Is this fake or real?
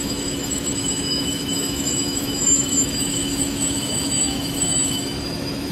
fake